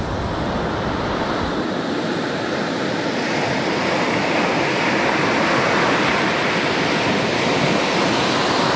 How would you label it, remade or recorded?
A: recorded